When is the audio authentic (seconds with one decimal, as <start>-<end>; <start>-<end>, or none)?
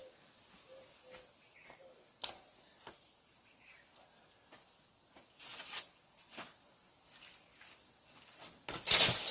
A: 0.0-9.3